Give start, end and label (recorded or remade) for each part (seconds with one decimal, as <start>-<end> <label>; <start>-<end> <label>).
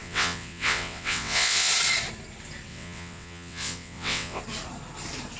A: 0.0-1.7 remade; 1.7-2.7 recorded; 2.7-4.4 remade; 4.4-5.4 recorded